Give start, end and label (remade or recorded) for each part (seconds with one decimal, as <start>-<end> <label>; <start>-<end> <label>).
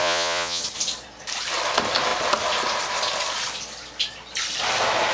0.0-0.6 remade; 0.6-5.1 recorded